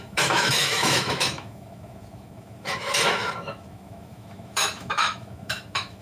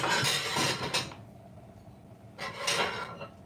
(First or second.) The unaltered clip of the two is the second